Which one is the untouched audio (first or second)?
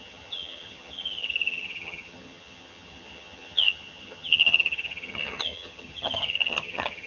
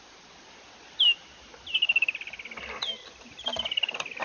second